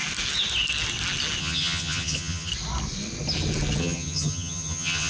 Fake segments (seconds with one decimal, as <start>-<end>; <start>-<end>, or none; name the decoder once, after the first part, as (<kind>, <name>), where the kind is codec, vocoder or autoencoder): 1.4-2.5 (vocoder, HiFi-GAN); 3.8-5.1